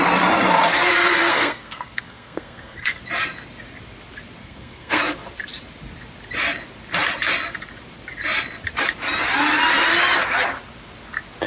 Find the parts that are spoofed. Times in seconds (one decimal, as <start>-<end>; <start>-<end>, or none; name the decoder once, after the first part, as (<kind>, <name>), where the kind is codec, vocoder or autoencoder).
1.3-3.0 (codec, SNAC); 4.4-5.0